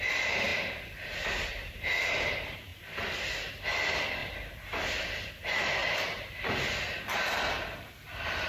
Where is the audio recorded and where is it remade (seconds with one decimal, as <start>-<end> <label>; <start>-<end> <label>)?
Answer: 0.0-2.7 recorded; 2.7-3.5 remade; 3.5-4.2 recorded; 4.2-5.3 remade; 5.3-8.5 recorded